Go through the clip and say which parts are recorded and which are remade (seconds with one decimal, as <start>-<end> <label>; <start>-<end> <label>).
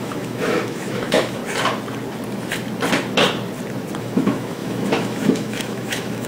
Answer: 0.0-1.4 remade; 1.4-4.0 recorded; 4.0-6.3 remade